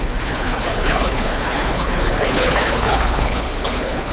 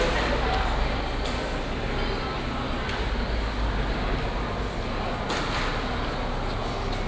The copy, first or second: first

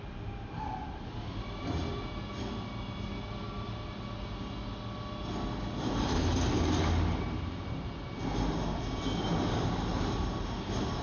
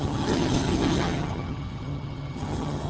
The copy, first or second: second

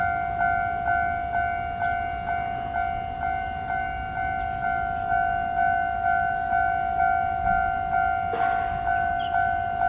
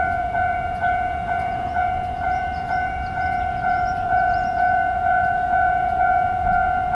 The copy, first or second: second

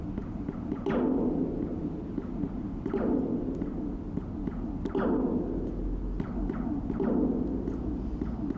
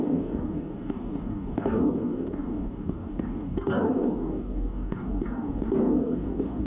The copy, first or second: second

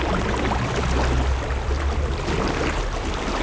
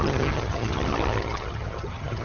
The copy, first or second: second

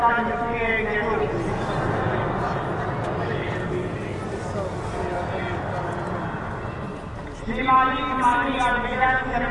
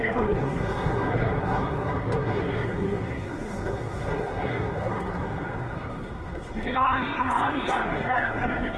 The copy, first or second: second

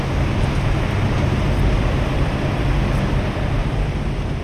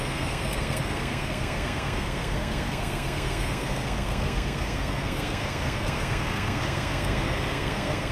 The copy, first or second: second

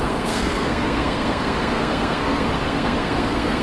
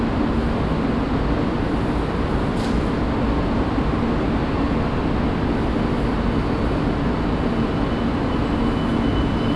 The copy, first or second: first